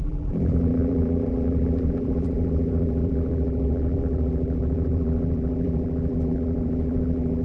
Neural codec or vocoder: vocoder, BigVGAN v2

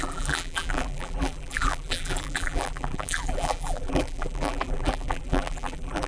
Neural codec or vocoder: vocoder, BigVGAN v2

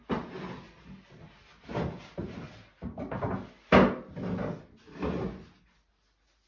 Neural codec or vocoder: none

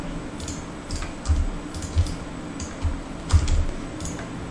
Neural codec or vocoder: none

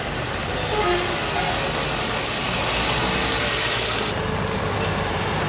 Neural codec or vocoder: none